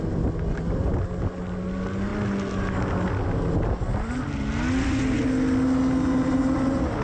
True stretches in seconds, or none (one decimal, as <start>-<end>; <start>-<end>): 0.0-7.0